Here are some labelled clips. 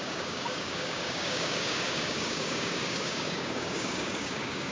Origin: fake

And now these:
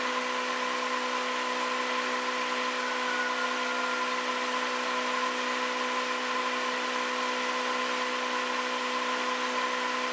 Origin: real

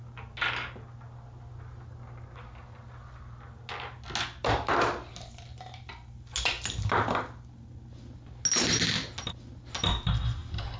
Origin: real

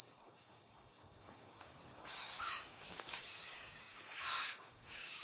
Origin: fake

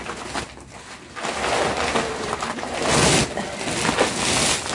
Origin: real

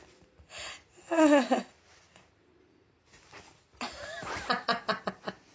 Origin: real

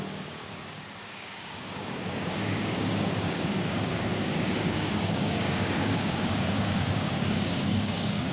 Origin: fake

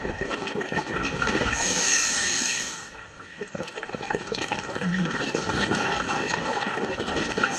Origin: fake